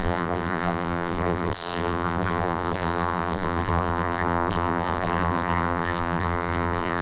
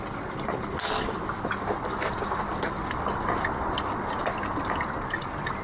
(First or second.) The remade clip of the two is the first